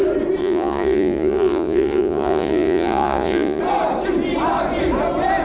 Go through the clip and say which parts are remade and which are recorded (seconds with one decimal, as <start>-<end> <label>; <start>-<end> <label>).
0.0-0.4 recorded; 0.4-3.6 remade; 3.6-5.4 recorded